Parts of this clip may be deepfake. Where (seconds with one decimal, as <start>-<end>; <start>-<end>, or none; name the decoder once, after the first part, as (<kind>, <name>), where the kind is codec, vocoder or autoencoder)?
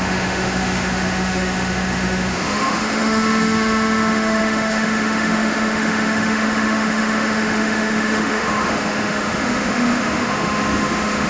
0.0-11.3 (autoencoder, DAC-VAE)